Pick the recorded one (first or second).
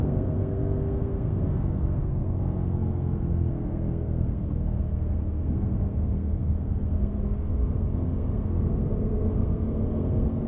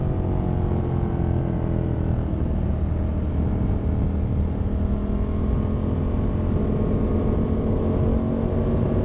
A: second